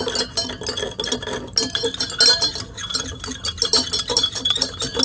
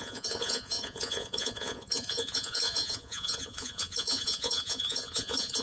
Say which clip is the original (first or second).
first